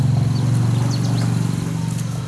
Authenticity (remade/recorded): recorded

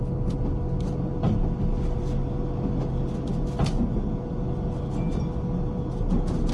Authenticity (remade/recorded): recorded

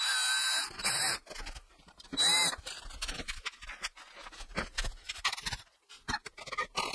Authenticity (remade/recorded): recorded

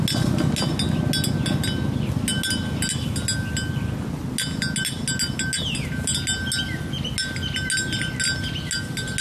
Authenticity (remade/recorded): recorded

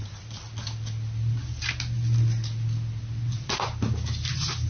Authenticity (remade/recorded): recorded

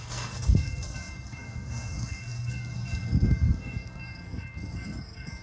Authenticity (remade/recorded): remade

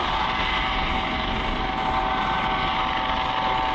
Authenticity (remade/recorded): recorded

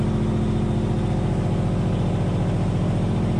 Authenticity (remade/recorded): recorded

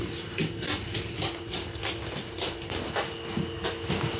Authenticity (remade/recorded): recorded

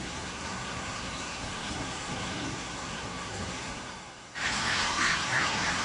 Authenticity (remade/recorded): remade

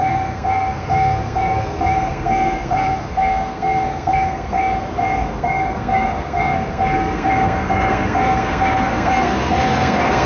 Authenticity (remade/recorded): remade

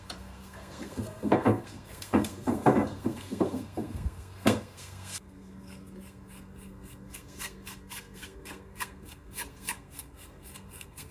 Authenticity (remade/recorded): remade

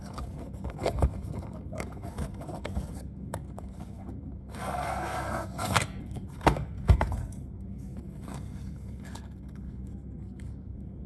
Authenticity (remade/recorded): remade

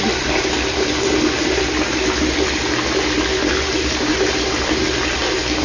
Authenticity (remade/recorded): recorded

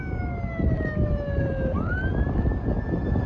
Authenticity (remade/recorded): recorded